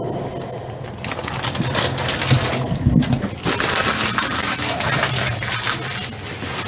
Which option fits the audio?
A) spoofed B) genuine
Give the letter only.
B